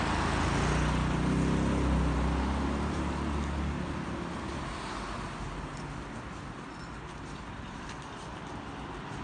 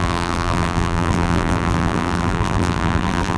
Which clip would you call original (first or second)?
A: first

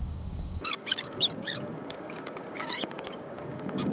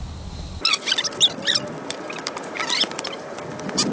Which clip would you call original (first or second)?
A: second